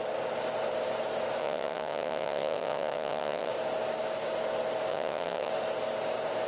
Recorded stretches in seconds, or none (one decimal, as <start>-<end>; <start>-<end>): 0.0-1.4; 3.5-4.9; 5.5-6.5